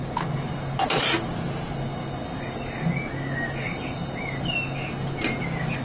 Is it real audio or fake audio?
real